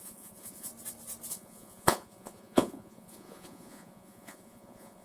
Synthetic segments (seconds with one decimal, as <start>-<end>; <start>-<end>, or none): 0.0-0.7; 1.3-5.0